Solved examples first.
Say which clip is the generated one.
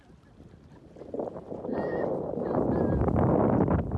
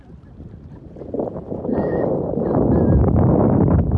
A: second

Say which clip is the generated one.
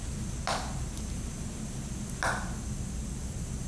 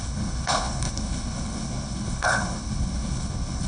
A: second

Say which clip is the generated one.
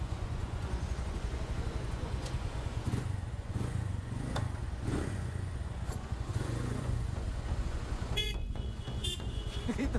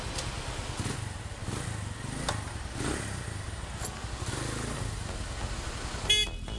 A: first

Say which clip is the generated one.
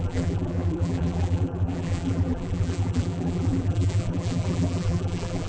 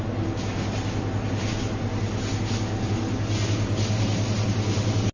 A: first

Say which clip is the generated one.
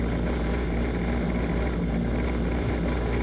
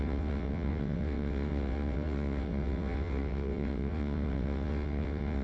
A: second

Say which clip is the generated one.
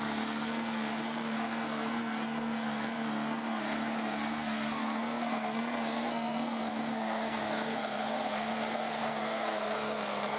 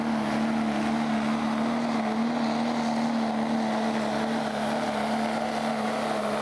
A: first